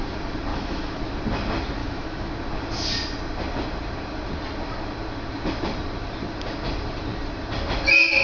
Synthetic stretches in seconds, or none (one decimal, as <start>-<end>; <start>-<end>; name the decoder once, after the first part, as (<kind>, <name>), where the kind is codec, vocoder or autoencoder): 0.5-1.0 (autoencoder, DAC-VAE); 1.8-2.3